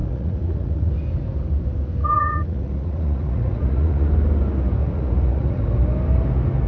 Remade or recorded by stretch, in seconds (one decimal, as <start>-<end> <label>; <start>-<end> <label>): 0.0-0.9 remade; 0.9-2.0 recorded; 2.0-4.1 remade; 4.1-4.8 recorded; 4.8-5.6 remade; 5.6-6.7 recorded